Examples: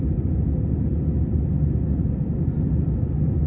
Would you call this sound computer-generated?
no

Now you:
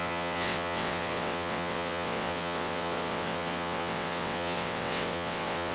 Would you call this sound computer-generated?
yes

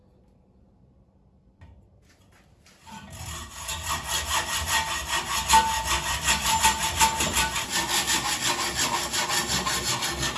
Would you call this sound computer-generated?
no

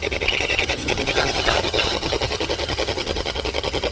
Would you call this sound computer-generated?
yes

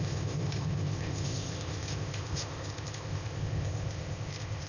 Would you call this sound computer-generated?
yes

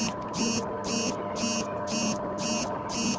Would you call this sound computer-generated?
no